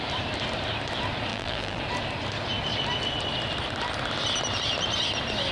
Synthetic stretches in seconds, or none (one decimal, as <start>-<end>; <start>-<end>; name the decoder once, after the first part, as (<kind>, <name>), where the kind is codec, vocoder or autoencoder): 1.3-1.8 (vocoder, BigVGAN v2)